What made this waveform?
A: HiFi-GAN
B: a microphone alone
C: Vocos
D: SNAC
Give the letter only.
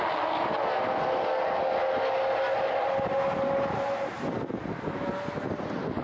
B